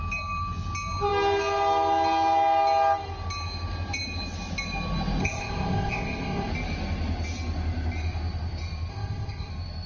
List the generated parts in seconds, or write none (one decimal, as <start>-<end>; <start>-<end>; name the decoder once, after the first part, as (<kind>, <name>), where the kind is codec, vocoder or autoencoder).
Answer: 5.2-6.5 (codec, ZipCodec); 8.9-9.5